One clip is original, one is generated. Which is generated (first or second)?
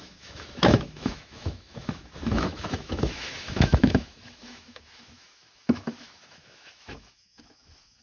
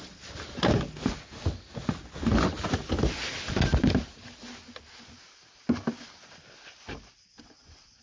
first